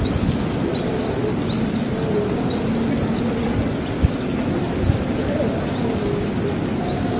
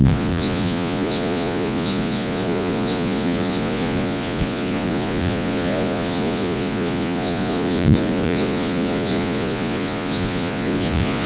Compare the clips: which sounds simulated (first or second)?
second